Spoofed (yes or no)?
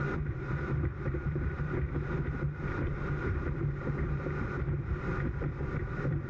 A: yes